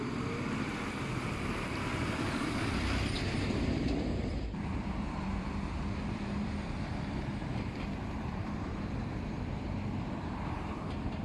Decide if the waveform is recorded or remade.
remade